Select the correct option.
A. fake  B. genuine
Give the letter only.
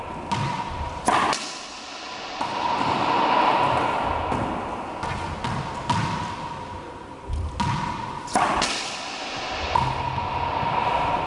B